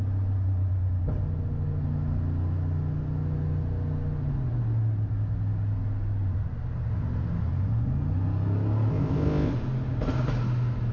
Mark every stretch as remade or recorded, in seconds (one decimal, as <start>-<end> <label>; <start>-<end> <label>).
0.0-8.9 recorded; 8.9-9.5 remade; 9.5-10.9 recorded